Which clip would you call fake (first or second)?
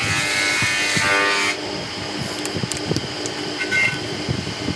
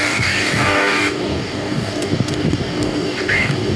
second